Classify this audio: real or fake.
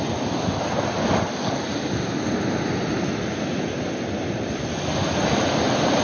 real